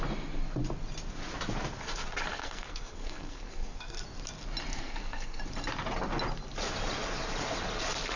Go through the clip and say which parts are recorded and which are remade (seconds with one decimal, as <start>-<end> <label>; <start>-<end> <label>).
0.0-2.3 recorded; 2.3-4.0 remade; 4.0-4.7 recorded; 4.7-5.4 remade; 5.4-8.2 recorded